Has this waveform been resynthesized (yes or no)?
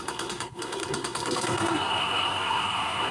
yes